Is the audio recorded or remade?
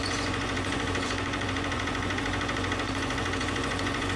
remade